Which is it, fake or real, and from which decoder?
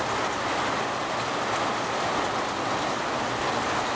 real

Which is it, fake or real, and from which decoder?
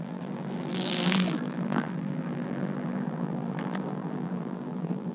fake, vocoder, BigVGAN v2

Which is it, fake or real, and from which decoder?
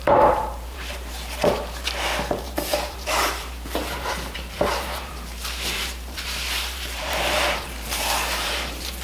fake, vocoder, BigVGAN v2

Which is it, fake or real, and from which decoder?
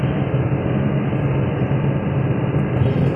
real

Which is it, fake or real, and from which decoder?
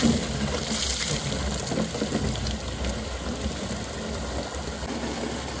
real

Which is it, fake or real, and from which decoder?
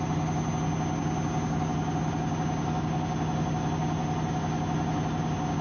real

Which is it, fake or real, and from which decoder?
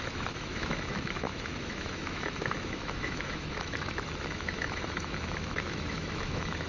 fake, autoencoder, DAC-VAE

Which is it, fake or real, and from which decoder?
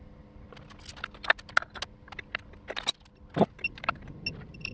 real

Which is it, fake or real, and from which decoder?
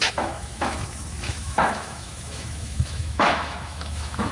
fake, autoencoder, DAC-VAE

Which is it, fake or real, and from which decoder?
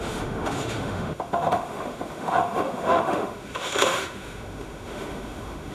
fake, autoencoder, DAC-VAE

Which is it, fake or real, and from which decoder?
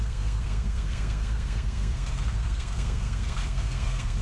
fake, codec, SNAC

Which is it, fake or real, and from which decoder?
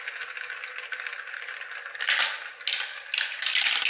real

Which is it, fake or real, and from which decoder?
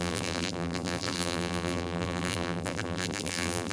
fake, vocoder, BigVGAN v2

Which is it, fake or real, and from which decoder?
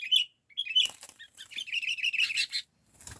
real